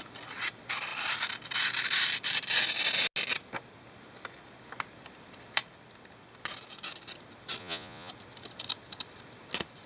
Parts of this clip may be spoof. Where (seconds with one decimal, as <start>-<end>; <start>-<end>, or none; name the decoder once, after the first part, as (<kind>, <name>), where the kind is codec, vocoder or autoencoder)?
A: 7.6-8.1 (vocoder, Vocos)